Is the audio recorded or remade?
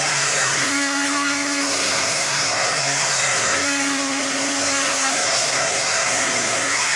remade